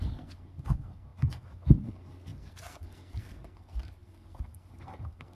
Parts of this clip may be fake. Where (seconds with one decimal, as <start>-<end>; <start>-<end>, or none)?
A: 0.0-5.3

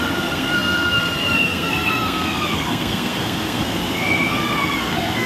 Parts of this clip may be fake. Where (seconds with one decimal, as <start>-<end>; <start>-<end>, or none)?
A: 0.0-5.3